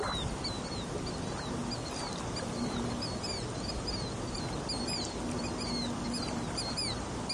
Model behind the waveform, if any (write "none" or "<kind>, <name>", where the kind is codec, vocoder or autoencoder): none